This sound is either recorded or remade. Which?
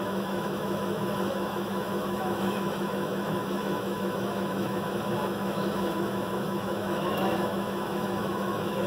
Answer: remade